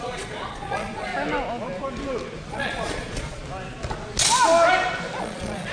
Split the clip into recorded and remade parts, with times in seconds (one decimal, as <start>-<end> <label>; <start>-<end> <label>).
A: 0.0-1.1 remade; 1.1-2.5 recorded; 2.5-3.4 remade; 3.4-5.2 recorded; 5.2-5.7 remade